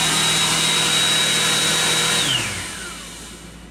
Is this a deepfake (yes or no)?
no